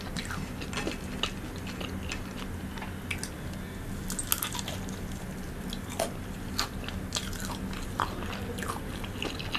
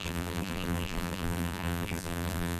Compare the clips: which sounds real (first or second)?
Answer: first